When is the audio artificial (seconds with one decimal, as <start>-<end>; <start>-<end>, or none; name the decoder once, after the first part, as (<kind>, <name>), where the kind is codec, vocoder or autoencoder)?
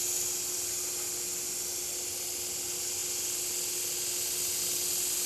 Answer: none